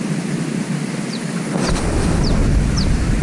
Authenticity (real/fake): real